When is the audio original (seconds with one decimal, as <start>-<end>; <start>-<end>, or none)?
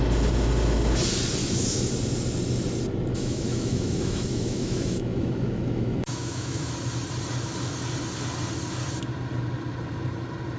0.0-1.4; 1.9-3.1; 6.7-10.6